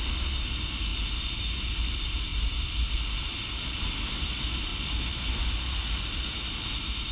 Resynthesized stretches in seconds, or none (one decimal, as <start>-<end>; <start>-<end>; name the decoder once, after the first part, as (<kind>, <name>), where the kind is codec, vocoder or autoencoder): 0.0-0.9 (vocoder, BigVGAN v2); 1.4-4.7; 5.3-7.1